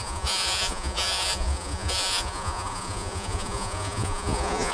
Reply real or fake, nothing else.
fake